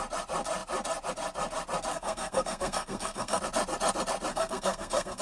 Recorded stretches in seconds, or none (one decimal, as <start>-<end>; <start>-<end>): 0.0-1.9; 3.4-4.3